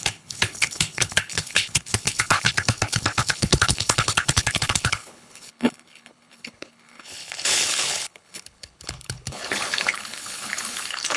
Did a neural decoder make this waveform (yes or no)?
yes